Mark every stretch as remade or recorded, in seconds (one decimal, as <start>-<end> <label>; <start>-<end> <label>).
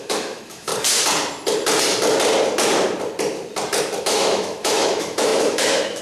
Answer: 0.0-0.7 remade; 0.7-4.0 recorded; 4.0-6.0 remade